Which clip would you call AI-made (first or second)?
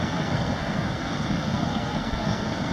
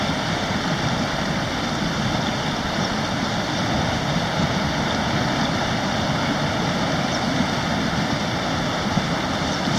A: first